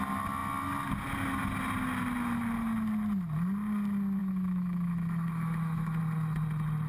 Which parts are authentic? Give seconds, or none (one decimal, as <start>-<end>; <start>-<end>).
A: 0.0-4.2; 6.0-6.9